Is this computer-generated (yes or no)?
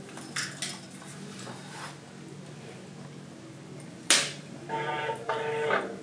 no